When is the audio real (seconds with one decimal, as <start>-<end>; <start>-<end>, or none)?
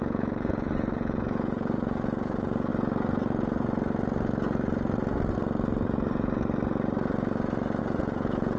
2.7-7.8